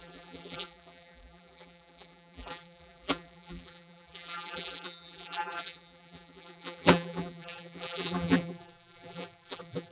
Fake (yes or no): yes